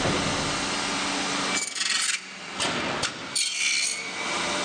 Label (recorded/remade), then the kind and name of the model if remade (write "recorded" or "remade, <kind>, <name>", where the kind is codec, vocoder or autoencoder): recorded